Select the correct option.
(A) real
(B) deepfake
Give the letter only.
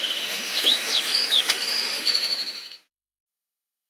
B